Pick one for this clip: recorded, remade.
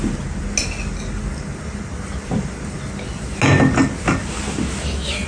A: recorded